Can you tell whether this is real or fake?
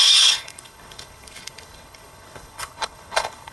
fake